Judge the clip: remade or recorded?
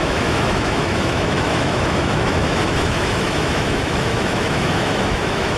remade